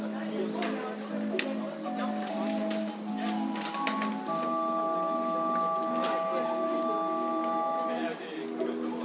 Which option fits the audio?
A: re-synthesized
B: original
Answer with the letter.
B